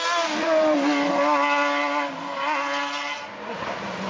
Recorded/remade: recorded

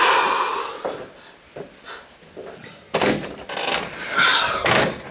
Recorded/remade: recorded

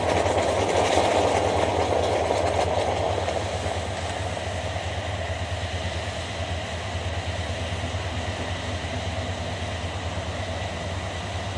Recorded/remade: recorded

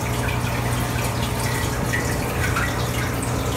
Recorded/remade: recorded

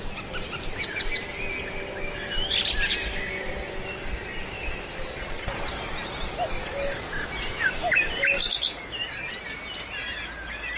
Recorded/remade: recorded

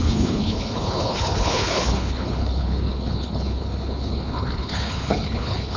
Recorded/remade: remade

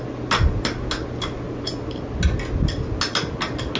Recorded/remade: recorded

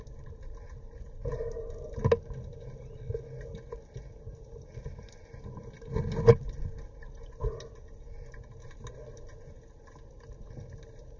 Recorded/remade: recorded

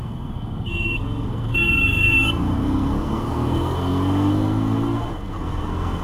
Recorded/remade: remade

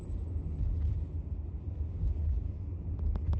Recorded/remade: recorded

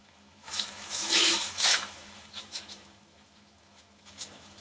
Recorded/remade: remade